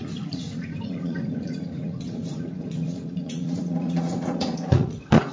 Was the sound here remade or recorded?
remade